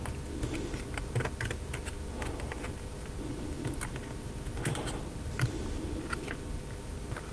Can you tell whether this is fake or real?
real